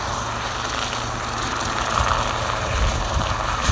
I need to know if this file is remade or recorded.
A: recorded